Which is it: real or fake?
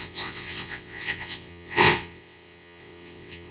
fake